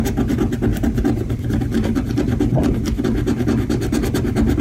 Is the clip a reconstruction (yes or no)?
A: no